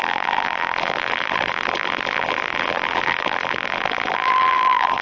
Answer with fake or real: fake